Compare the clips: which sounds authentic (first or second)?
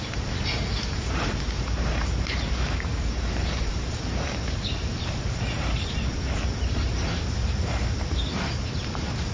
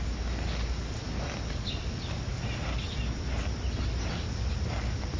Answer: second